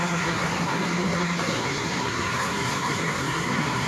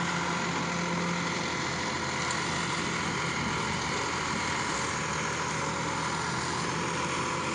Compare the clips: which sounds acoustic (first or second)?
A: second